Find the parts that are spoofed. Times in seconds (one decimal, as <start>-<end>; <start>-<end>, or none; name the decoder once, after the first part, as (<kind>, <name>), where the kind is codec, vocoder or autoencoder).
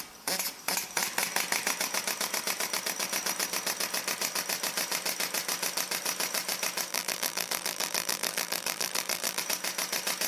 6.9-9.4 (vocoder, BigVGAN v2)